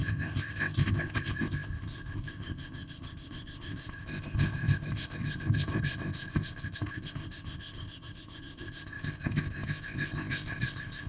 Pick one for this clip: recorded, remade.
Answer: remade